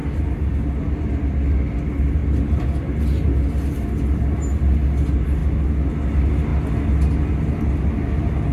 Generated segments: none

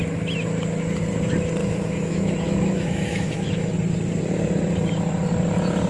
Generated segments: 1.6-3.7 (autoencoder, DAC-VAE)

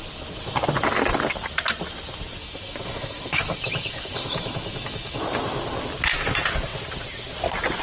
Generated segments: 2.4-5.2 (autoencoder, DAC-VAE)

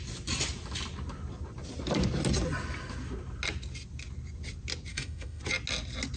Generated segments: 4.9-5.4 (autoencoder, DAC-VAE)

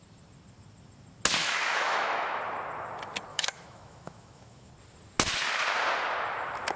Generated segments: 1.4-2.4 (autoencoder, DAC-VAE); 3.3-4.7